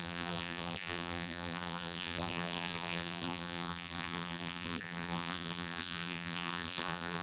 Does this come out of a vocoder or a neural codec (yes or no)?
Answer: yes